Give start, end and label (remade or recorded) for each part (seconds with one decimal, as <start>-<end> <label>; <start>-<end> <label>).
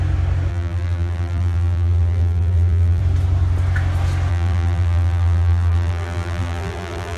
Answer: 0.0-0.5 recorded; 0.5-3.0 remade; 3.0-4.3 recorded; 4.3-7.2 remade